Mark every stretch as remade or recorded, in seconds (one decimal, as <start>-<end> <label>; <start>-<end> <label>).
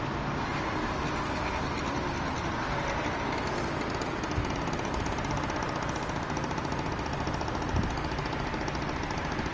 0.0-9.5 recorded